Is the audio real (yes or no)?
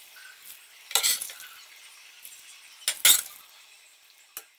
yes